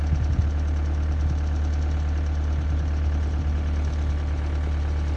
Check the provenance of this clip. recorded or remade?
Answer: recorded